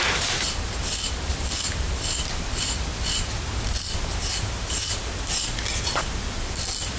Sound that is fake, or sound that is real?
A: real